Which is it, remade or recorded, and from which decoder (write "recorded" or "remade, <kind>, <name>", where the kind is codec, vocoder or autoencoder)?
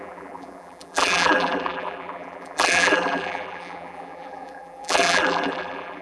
remade, vocoder, BigVGAN v2